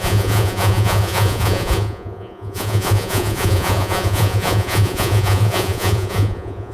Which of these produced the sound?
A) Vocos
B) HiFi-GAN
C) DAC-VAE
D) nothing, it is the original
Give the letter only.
A